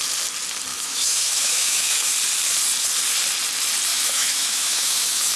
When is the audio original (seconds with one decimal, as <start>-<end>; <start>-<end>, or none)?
0.0-0.7; 2.1-3.9